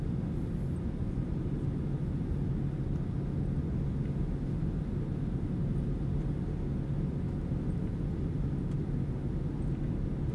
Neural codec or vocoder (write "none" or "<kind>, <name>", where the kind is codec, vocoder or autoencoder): none